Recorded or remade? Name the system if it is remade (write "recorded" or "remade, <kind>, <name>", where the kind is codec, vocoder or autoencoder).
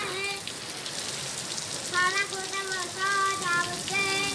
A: recorded